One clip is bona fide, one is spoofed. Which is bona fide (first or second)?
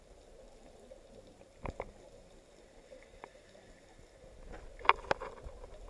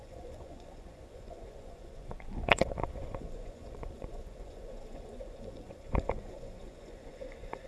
first